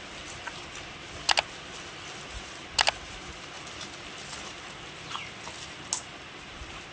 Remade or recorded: recorded